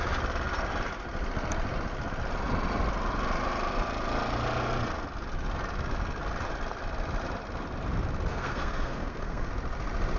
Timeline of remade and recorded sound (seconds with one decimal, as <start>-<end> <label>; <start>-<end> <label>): 0.0-8.3 recorded; 8.3-9.5 remade; 9.5-10.2 recorded